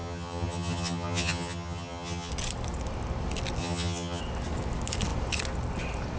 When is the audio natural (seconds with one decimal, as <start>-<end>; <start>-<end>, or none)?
2.3-3.6; 4.2-6.2